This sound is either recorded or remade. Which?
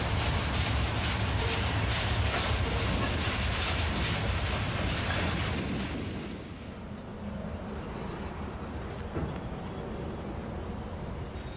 recorded